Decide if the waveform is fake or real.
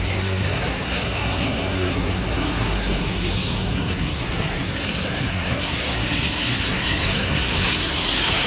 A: fake